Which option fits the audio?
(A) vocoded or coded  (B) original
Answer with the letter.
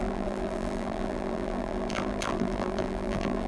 A